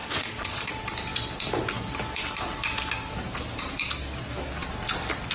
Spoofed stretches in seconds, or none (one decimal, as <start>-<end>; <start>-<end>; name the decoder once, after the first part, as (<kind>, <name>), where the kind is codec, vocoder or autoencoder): 0.0-0.7 (vocoder, Vocos)